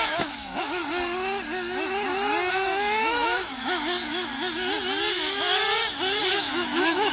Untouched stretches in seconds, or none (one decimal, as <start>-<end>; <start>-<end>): 0.8-2.5; 4.3-5.1; 5.6-6.2